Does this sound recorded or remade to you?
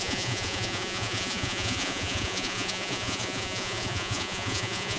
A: remade